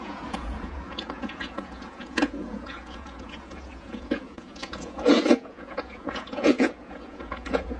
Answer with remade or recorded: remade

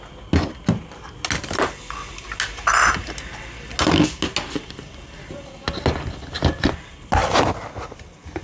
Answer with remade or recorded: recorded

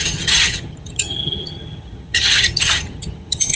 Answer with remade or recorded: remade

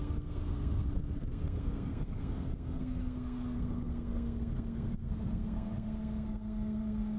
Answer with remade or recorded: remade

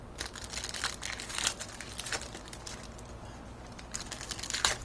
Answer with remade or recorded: recorded